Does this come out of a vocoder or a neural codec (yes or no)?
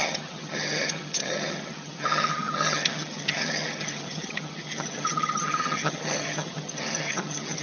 yes